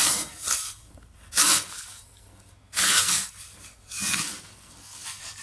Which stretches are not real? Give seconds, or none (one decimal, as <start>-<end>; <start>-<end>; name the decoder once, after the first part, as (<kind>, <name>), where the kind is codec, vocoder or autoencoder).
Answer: 0.0-5.4 (codec, SNAC)

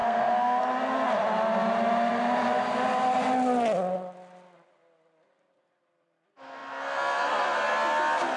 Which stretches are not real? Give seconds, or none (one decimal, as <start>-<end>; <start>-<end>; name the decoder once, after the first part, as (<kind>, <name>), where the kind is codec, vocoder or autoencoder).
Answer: 0.0-0.6 (codec, SNAC)

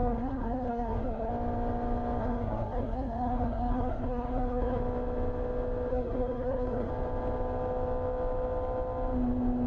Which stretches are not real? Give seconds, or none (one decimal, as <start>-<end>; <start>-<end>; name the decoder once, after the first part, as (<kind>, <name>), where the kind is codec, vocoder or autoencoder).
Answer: 0.0-1.3 (codec, SNAC); 2.2-4.8; 5.9-6.9

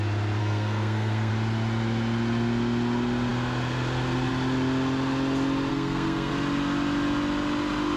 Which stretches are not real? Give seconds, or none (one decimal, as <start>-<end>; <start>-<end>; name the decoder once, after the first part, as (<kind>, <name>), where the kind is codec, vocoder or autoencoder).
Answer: 0.4-1.3 (codec, SNAC); 5.7-6.3

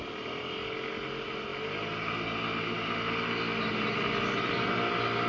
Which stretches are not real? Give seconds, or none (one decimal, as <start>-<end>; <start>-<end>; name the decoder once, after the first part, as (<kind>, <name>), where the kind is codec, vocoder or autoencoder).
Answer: none